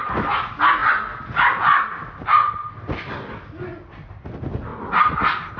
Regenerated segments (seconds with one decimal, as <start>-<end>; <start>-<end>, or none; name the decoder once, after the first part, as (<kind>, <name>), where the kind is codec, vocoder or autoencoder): none